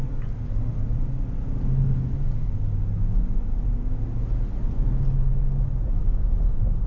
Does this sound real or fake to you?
real